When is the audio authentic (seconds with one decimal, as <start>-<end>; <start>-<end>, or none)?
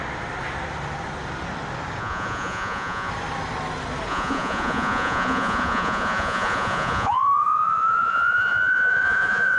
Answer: 0.0-2.0; 3.1-4.1